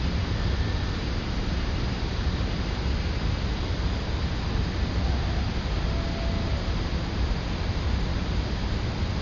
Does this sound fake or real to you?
real